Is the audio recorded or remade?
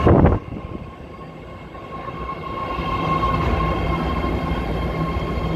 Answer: recorded